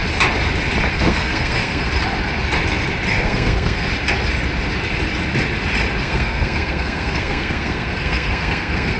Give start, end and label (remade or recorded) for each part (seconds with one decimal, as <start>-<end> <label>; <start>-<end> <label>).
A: 0.0-0.9 recorded; 0.9-1.9 remade; 1.9-3.1 recorded; 3.1-3.9 remade; 3.9-6.0 recorded; 6.0-9.0 remade